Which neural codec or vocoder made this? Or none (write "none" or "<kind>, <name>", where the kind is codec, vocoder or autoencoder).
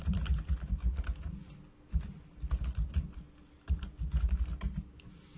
none